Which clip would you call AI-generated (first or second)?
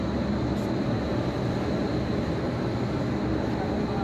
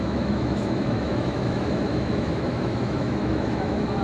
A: second